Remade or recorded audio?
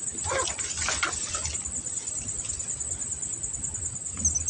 recorded